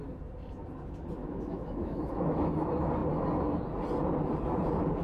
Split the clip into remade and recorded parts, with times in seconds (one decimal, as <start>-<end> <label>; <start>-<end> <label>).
0.0-1.2 recorded; 1.2-2.5 remade; 2.5-5.0 recorded